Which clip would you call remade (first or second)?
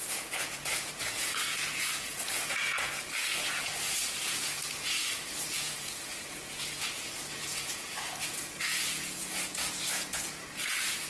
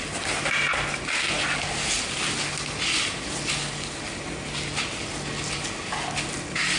first